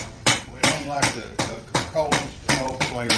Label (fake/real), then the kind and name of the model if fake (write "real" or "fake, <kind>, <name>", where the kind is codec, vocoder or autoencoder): fake, vocoder, WaveNeXt